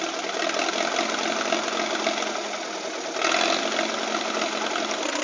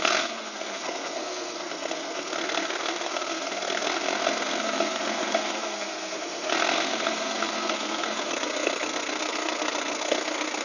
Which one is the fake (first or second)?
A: second